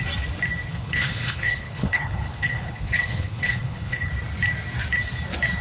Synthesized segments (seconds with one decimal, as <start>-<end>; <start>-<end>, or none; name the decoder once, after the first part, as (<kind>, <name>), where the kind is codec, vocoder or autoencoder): 0.7-4.1 (codec, HILCodec)